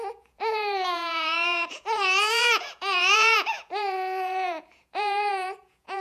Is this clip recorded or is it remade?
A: remade